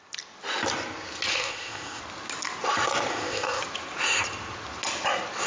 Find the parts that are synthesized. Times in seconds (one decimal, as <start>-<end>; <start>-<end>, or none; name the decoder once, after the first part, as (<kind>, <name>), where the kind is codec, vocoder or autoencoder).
1.3-2.0 (codec, ZipCodec); 3.1-3.6